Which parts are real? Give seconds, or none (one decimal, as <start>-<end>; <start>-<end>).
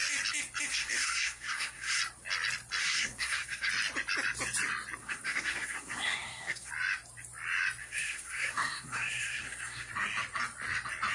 0.0-0.7; 2.0-2.8; 3.7-5.0; 6.7-7.8; 9.9-11.1